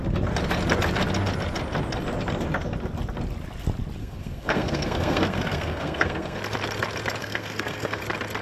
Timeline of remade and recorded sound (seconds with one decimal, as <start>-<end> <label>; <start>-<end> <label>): 0.0-4.0 recorded; 4.0-6.4 remade; 6.4-7.2 recorded; 7.2-8.0 remade; 8.0-8.4 recorded

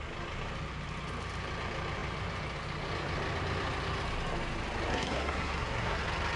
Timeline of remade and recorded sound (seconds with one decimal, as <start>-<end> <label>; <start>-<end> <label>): 0.0-4.9 recorded; 4.9-6.0 remade; 6.0-6.4 recorded